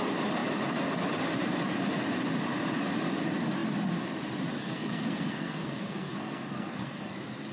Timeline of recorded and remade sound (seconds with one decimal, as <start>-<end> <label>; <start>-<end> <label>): 0.0-4.6 recorded; 4.6-7.1 remade; 7.1-7.5 recorded